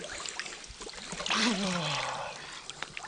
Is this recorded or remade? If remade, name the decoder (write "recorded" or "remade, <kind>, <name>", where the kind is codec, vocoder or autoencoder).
recorded